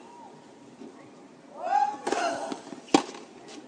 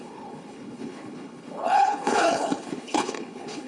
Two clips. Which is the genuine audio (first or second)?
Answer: first